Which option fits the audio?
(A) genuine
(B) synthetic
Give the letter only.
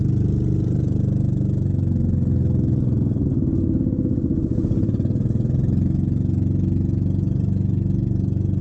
A